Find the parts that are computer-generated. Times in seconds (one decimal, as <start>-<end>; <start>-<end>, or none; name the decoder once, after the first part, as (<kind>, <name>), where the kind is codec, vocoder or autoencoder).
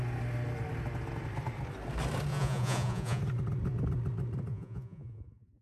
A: 2.3-3.2 (vocoder, Vocos); 4.5-5.6